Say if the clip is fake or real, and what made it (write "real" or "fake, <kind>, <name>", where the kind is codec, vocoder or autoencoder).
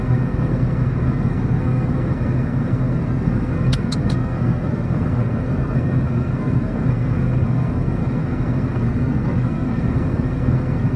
fake, codec, SNAC